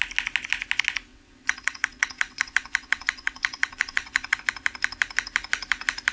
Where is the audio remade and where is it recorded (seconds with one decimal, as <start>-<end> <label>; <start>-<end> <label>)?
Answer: 0.0-1.1 recorded; 1.1-4.4 remade; 4.4-6.1 recorded